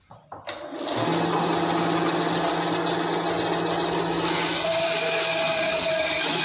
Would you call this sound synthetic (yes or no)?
no